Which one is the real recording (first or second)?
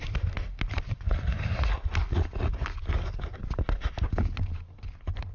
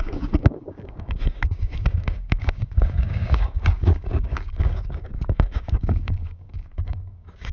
first